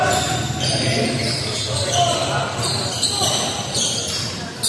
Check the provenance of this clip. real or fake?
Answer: real